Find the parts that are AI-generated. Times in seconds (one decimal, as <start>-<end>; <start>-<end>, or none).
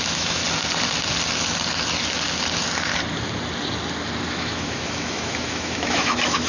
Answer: 0.0-0.4; 4.3-6.5